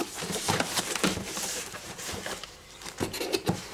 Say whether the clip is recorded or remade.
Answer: remade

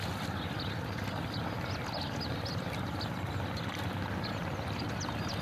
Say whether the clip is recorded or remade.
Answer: recorded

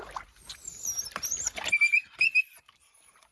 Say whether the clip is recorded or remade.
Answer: remade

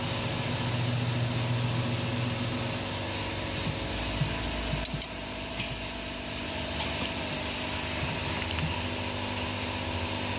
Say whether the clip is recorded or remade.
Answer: recorded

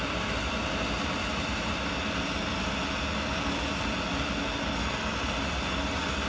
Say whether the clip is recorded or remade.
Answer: recorded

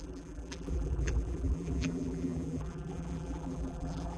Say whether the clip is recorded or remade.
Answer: remade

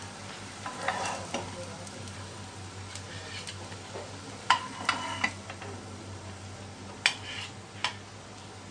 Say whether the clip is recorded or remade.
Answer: recorded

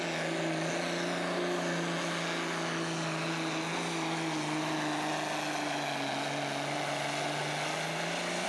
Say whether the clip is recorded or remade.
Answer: recorded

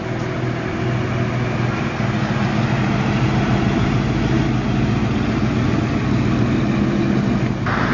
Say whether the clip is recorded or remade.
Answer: recorded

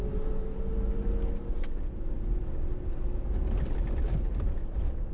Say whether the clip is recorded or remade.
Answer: recorded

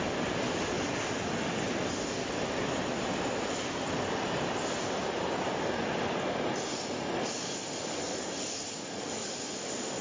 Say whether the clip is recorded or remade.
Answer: recorded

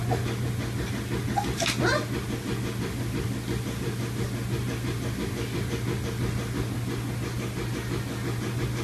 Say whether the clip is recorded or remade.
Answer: recorded